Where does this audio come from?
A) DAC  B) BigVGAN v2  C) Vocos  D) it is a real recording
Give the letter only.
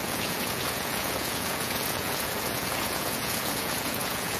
C